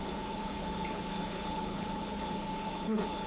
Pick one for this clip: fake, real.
fake